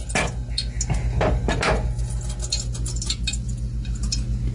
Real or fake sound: real